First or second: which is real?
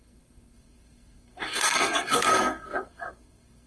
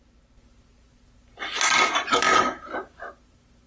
second